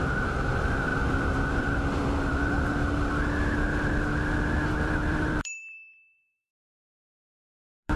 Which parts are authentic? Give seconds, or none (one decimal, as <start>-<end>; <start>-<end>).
3.2-4.7